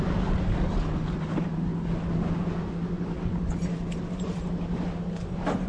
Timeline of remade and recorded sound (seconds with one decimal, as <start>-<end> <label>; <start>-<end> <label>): 0.0-5.7 recorded